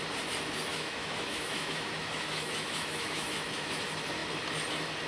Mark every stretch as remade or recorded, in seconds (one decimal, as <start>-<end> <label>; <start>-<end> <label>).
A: 0.0-0.7 recorded; 0.7-3.8 remade; 3.8-5.1 recorded